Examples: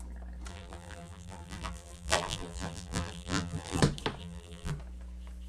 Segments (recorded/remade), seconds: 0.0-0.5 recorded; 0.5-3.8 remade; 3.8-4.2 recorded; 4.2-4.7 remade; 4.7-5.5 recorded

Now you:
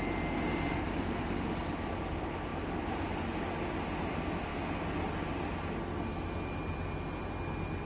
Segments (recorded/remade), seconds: 0.0-2.5 recorded; 2.5-3.1 remade; 3.1-7.9 recorded

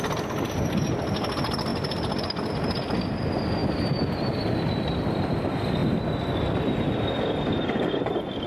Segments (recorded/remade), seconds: 0.0-3.6 recorded; 3.6-4.7 remade; 4.7-8.5 recorded

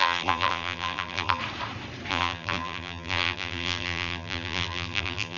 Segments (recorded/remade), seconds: 0.0-1.4 remade; 1.4-2.1 recorded; 2.1-5.4 remade

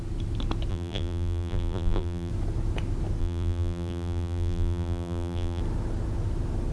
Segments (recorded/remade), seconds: 0.0-0.7 recorded; 0.7-2.3 remade; 2.3-3.2 recorded; 3.2-5.6 remade; 5.6-6.7 recorded